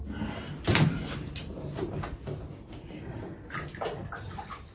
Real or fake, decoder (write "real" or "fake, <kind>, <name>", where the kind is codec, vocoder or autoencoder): real